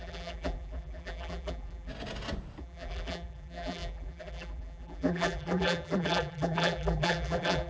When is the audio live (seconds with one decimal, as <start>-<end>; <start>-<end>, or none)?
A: 1.9-2.6